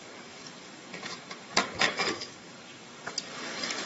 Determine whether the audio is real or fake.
fake